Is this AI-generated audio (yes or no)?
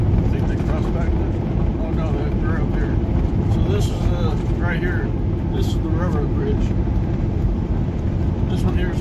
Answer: no